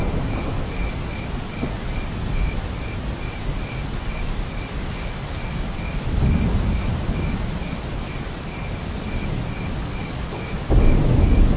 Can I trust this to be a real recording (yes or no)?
yes